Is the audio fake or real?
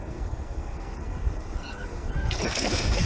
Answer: fake